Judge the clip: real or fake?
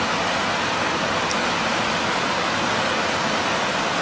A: real